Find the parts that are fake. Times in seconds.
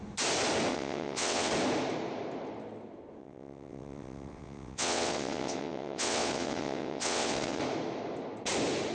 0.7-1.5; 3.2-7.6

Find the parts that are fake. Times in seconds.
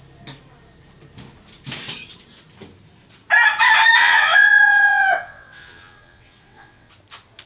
4.0-6.9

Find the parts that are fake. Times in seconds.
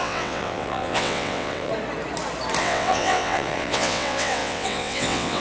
0.0-1.7; 2.6-5.4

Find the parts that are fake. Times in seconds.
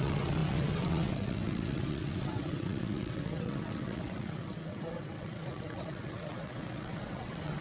0.0-7.6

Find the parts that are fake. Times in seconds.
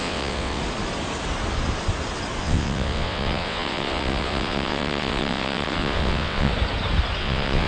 0.0-0.6; 2.4-6.5; 7.2-7.7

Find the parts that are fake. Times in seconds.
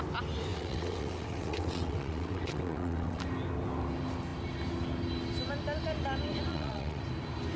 0.5-3.2; 6.5-7.0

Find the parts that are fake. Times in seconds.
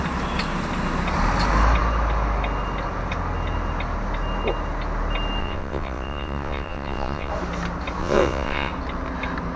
5.4-7.3; 8.0-8.7